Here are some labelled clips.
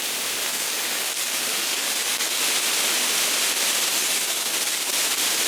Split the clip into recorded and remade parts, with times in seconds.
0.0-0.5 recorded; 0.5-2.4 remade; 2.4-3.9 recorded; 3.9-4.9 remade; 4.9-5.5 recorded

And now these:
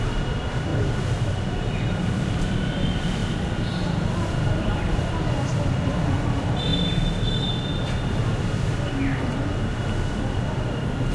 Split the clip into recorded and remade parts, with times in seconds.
0.0-0.7 recorded; 0.7-1.3 remade; 1.3-3.2 recorded; 3.2-6.1 remade; 6.1-11.1 recorded

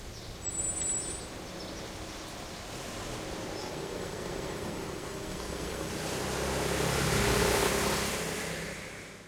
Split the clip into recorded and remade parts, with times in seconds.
0.0-3.6 recorded; 3.6-5.9 remade; 5.9-9.3 recorded

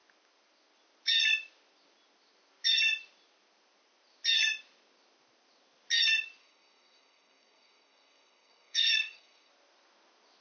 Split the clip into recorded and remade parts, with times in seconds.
0.0-6.4 recorded; 6.4-9.5 remade; 9.5-10.4 recorded

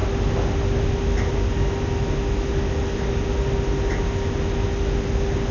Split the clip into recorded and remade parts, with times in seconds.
0.0-5.5 recorded

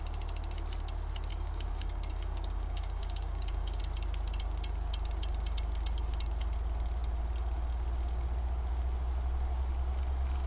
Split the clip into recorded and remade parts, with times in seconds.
0.0-1.3 recorded; 1.3-3.8 remade; 3.8-10.5 recorded

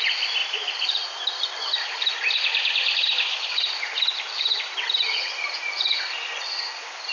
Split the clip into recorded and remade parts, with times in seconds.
0.0-7.1 recorded

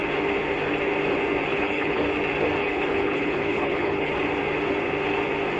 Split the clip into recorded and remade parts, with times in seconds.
0.0-1.5 recorded; 1.5-2.0 remade; 2.0-2.6 recorded; 2.6-4.1 remade; 4.1-5.6 recorded